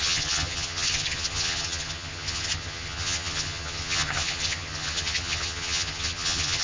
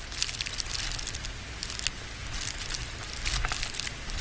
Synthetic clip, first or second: first